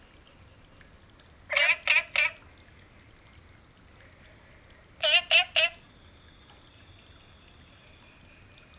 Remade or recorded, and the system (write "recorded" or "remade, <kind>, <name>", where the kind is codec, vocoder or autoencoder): recorded